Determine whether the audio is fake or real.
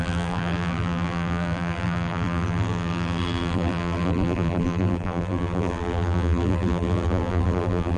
fake